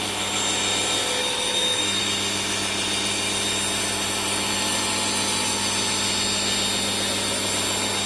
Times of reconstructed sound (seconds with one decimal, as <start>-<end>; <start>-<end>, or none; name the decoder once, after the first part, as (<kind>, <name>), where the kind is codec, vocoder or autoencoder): 1.2-2.0 (autoencoder, DAC-VAE)